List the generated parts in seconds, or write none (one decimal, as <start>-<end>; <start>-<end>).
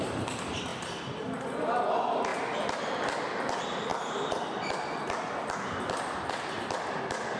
2.3-2.9; 3.9-4.6